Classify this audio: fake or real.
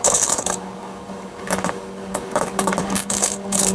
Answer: fake